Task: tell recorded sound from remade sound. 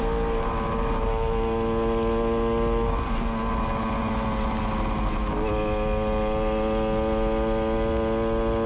recorded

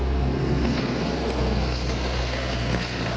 remade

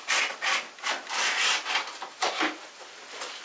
recorded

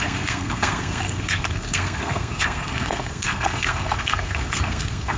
remade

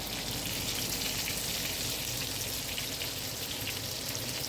recorded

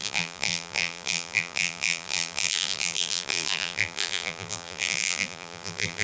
remade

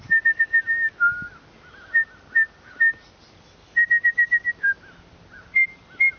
recorded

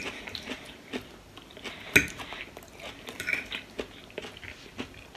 recorded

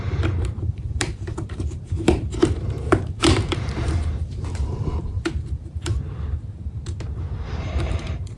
remade